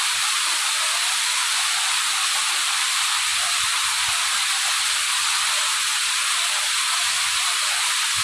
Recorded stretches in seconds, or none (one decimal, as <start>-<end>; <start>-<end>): 3.3-8.2